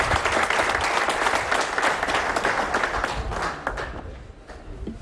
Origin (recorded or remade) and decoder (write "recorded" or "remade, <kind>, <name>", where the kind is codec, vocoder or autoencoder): recorded